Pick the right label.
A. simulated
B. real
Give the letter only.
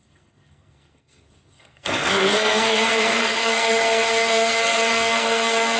A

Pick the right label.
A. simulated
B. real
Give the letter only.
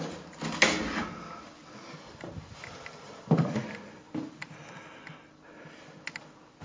B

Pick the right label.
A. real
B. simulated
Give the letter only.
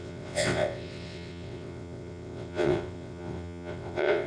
B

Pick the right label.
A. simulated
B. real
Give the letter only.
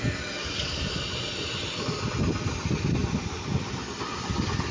B